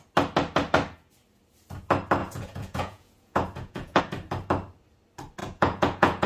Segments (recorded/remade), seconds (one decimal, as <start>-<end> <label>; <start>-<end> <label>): 0.0-2.2 recorded; 2.2-4.0 remade; 4.0-5.4 recorded; 5.4-6.3 remade